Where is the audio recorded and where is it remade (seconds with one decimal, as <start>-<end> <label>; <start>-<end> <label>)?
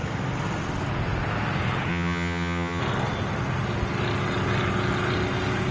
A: 0.0-1.9 recorded; 1.9-2.8 remade; 2.8-5.7 recorded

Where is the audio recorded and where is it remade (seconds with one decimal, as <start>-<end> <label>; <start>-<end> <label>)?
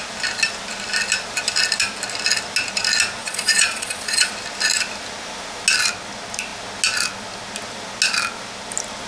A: 0.0-3.2 recorded; 3.2-4.3 remade; 4.3-9.1 recorded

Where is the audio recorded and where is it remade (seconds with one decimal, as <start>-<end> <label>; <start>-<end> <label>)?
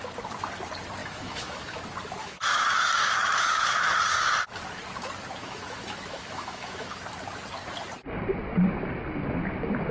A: 0.0-1.0 recorded; 1.0-1.8 remade; 1.8-2.2 recorded; 2.2-4.0 remade; 4.0-5.4 recorded; 5.4-7.0 remade; 7.0-9.9 recorded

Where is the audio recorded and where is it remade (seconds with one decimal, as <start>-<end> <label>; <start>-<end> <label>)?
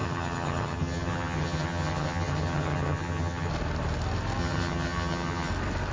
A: 0.0-3.5 remade; 3.5-4.4 recorded; 4.4-5.5 remade; 5.5-5.9 recorded